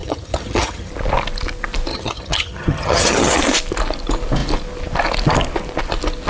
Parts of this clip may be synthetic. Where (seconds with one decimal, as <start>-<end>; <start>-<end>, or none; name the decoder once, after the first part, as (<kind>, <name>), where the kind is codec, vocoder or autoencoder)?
0.0-0.9 (vocoder, HiFi-GAN); 1.9-3.4